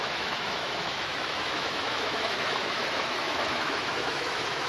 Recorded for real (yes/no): no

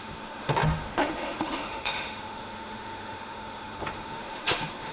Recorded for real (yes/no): no